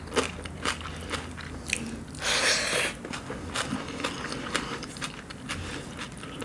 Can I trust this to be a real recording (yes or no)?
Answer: yes